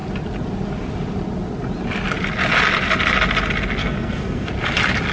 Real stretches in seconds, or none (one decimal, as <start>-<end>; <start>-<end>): 0.0-3.8; 4.5-5.1